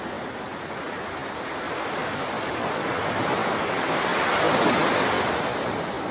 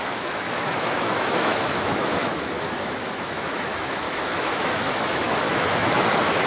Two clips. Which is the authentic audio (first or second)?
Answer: first